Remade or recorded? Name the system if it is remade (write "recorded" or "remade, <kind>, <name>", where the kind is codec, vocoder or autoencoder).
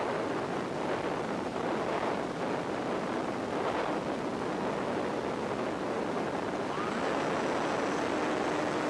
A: recorded